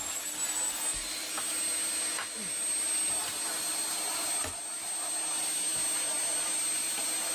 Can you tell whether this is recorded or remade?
recorded